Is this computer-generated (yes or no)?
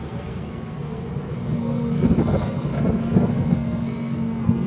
yes